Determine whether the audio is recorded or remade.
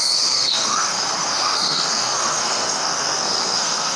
remade